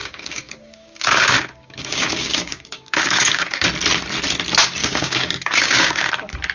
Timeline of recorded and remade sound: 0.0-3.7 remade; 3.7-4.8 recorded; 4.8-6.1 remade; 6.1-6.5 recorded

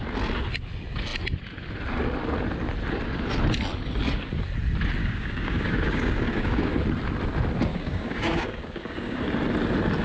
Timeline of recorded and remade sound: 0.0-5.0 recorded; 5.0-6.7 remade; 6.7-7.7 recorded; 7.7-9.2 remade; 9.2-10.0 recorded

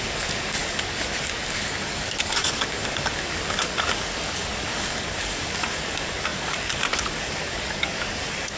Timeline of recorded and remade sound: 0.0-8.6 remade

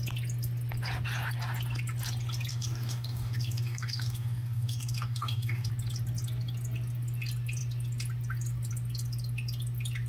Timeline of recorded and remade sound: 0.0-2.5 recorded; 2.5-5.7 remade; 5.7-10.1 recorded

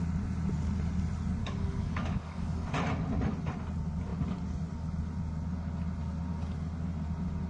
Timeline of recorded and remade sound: 0.0-1.4 recorded; 1.4-2.7 remade; 2.7-7.5 recorded

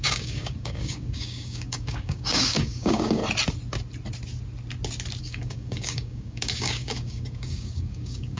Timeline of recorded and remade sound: 0.0-3.2 remade; 3.2-5.2 recorded; 5.2-8.4 remade

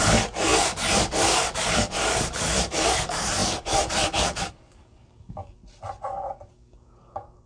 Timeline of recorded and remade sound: 0.0-5.6 remade; 5.6-6.5 recorded; 6.5-7.5 remade

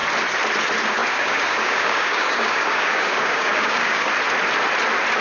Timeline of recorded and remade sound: 0.0-1.0 recorded; 1.0-4.1 remade; 4.1-5.2 recorded